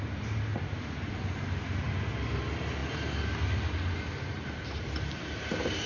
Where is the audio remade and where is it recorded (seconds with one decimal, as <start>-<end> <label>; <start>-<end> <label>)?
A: 0.0-5.9 recorded